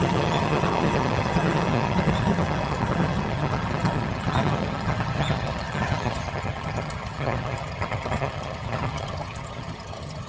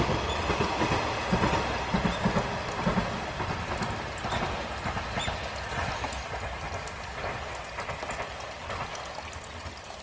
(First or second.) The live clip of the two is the second